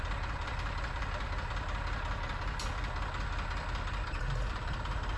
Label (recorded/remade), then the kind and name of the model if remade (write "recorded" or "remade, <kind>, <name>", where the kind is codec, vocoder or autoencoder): remade, vocoder, BigVGAN v2